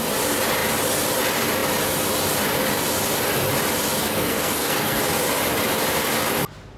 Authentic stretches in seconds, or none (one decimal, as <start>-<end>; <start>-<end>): 0.0-4.0; 5.0-6.8